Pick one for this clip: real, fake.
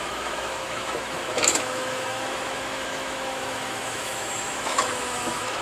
fake